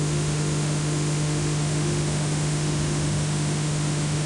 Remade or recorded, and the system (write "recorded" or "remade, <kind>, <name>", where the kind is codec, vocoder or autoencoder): remade, autoencoder, DAC-VAE